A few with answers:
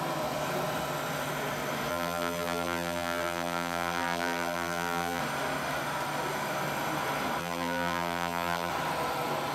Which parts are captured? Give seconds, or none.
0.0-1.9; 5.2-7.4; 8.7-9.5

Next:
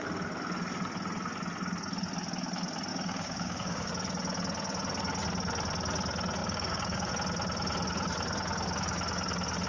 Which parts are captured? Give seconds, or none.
0.0-2.9; 3.9-6.4; 7.1-9.7